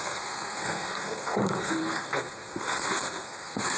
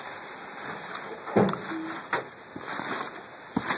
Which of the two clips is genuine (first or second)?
second